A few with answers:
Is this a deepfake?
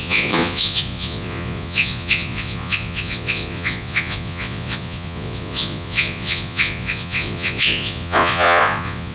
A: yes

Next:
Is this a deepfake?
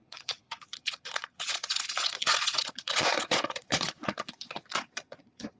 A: yes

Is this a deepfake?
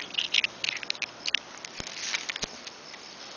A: no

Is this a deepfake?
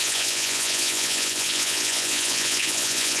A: yes